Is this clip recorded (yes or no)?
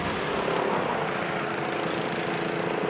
yes